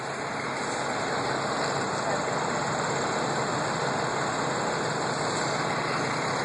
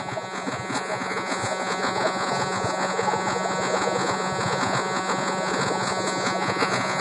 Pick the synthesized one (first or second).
second